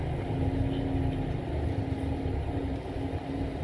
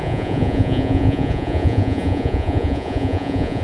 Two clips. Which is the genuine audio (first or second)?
first